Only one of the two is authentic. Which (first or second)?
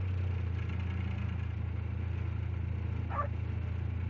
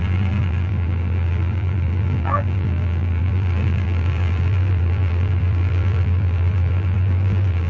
first